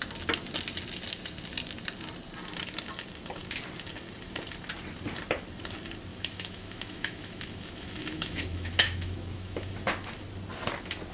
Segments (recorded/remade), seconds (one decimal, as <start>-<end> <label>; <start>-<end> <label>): 0.0-6.1 recorded; 6.1-9.7 remade; 9.7-11.1 recorded